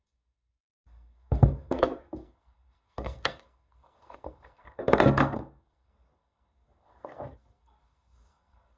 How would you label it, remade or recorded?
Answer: remade